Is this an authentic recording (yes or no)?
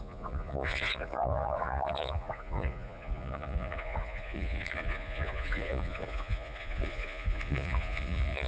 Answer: no